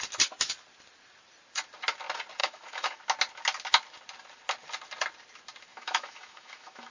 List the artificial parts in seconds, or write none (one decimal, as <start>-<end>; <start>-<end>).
2.4-3.0; 5.7-6.9